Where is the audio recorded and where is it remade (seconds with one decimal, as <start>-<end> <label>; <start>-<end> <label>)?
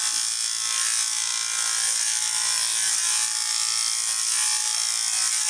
0.0-5.5 recorded